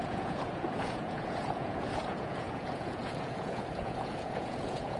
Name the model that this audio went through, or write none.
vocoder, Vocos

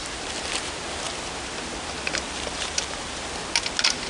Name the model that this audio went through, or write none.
none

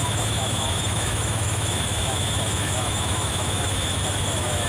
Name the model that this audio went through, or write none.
autoencoder, DAC-VAE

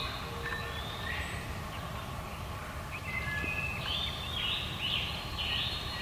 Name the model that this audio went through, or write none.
none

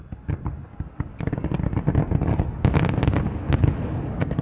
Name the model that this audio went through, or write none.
none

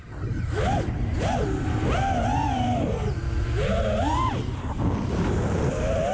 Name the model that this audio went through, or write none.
none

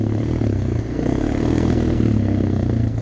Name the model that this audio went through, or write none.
codec, SNAC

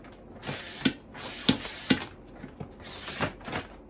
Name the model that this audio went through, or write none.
none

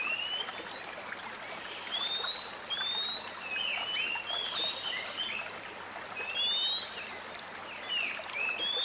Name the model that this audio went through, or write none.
none